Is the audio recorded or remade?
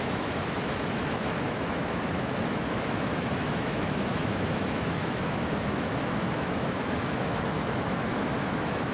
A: remade